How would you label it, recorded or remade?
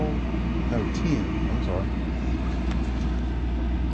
recorded